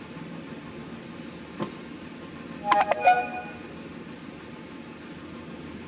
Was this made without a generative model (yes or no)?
yes